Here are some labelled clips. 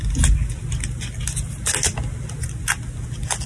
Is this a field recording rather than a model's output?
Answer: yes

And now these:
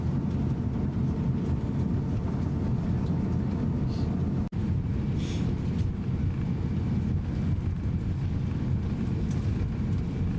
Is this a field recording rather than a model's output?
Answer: yes